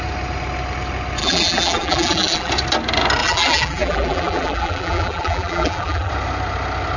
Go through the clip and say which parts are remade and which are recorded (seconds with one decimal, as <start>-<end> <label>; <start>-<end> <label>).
0.0-1.2 recorded; 1.2-2.5 remade; 2.5-3.2 recorded; 3.2-6.1 remade; 6.1-7.0 recorded